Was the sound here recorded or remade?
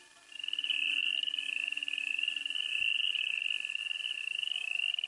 recorded